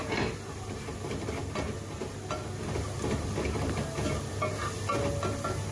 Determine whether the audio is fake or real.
real